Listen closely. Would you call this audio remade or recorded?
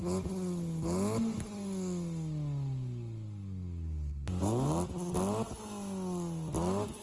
recorded